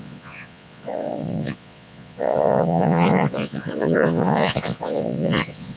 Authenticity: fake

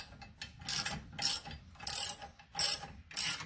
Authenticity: real